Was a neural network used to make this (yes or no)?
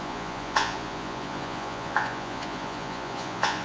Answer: yes